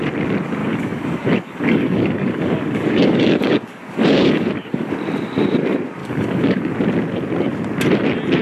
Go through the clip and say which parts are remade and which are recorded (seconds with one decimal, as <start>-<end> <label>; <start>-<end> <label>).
0.0-0.6 recorded; 0.6-4.9 remade; 4.9-6.0 recorded; 6.0-6.7 remade; 6.7-8.4 recorded